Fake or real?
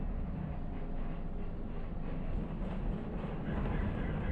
real